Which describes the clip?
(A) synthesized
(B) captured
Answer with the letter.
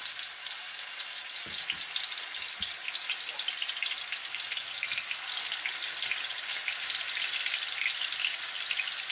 B